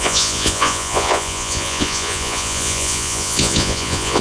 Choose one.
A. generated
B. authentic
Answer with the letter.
A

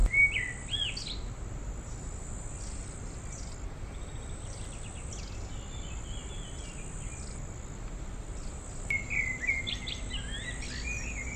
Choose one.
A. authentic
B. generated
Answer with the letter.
A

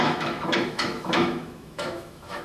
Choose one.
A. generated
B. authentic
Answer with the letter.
A